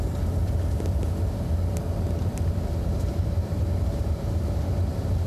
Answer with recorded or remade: recorded